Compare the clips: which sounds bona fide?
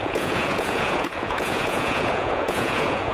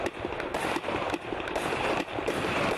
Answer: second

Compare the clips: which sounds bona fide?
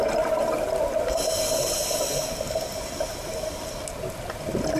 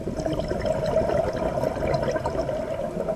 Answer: first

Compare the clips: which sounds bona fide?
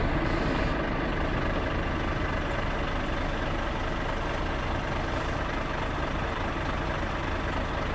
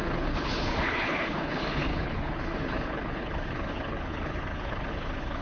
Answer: first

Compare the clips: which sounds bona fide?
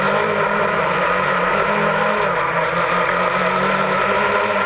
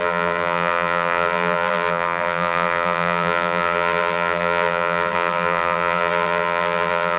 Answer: first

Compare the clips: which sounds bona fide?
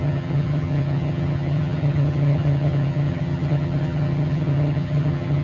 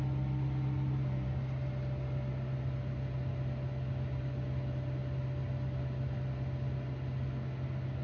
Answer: second